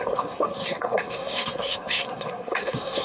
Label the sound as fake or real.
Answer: fake